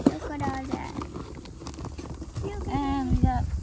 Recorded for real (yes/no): yes